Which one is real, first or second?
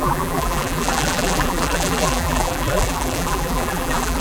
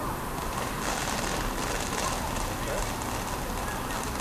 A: second